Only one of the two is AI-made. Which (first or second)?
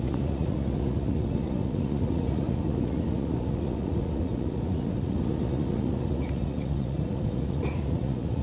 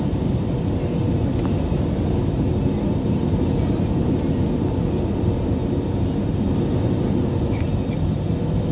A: first